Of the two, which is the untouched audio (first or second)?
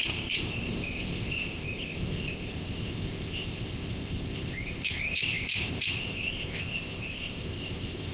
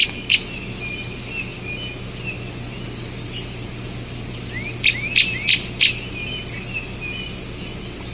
second